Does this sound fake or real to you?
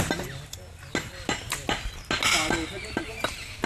real